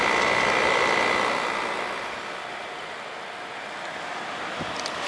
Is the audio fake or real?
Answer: real